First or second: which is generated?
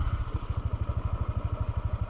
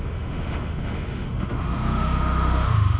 second